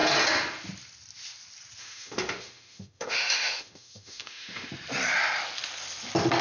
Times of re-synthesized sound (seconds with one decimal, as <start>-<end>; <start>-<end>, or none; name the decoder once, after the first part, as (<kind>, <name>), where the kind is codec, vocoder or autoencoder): 1.8-4.7 (autoencoder, DAC-VAE)